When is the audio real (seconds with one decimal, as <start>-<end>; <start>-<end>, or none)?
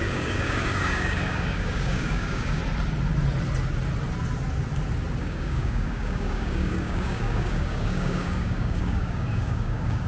2.6-5.2